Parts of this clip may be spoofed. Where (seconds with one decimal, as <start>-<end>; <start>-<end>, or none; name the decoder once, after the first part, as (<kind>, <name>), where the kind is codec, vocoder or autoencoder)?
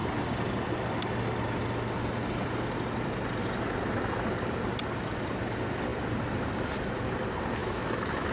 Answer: 7.6-8.3 (autoencoder, DAC-VAE)